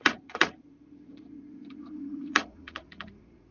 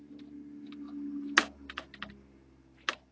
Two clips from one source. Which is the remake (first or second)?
first